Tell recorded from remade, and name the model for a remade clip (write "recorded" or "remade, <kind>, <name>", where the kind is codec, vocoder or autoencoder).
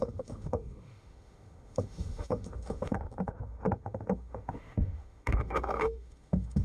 remade, autoencoder, DAC-VAE